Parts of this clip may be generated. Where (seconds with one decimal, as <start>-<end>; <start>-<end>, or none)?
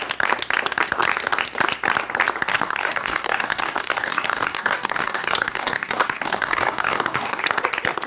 2.5-7.4